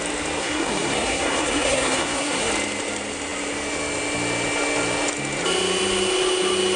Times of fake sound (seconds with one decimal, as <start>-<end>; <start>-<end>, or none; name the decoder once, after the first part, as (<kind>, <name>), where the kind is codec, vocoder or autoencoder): 0.4-2.5 (codec, SNAC)